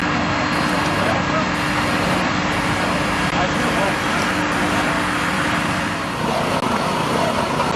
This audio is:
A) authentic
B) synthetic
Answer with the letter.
A